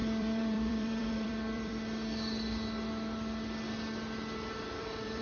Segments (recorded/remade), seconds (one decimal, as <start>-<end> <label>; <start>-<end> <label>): 0.0-1.7 remade; 1.7-4.8 recorded; 4.8-5.2 remade